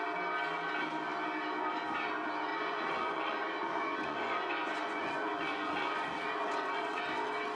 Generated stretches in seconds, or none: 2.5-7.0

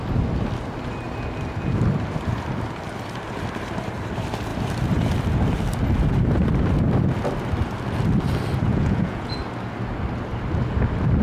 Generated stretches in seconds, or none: 8.7-9.3

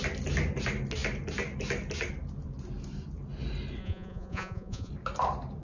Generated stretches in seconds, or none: 3.8-4.9